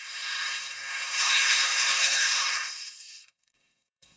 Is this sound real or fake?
fake